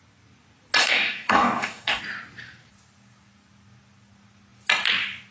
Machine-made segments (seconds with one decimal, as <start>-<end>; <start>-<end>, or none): 0.8-2.0

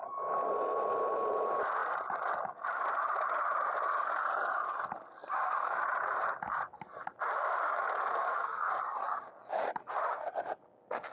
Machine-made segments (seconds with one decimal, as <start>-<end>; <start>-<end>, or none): 8.2-8.7

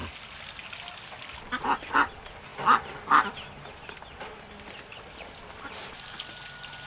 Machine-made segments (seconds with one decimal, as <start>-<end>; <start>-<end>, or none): none

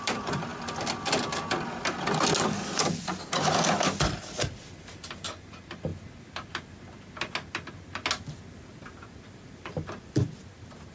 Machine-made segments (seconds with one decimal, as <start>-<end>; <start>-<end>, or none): 0.0-0.5; 4.2-5.9; 9.1-10.9